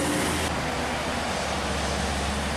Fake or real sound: real